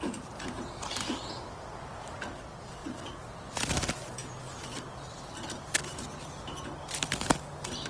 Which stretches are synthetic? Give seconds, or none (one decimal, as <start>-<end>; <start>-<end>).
2.8-3.5